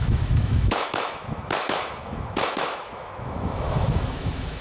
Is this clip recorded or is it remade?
remade